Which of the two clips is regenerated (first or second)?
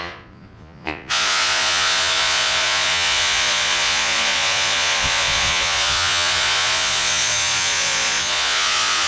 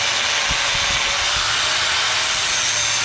first